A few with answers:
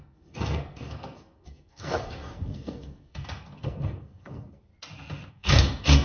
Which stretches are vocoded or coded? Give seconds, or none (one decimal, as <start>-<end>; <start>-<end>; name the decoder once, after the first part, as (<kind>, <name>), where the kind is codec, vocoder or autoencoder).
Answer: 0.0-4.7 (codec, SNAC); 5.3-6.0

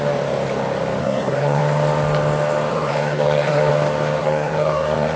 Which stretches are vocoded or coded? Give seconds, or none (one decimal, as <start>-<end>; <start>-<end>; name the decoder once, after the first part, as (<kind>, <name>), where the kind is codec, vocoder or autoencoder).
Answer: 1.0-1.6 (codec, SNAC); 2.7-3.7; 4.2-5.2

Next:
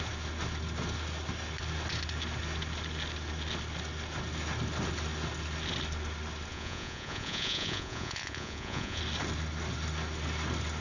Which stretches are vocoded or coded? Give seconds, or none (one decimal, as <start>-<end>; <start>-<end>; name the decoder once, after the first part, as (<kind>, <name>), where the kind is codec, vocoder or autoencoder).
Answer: 6.5-9.0 (vocoder, Vocos)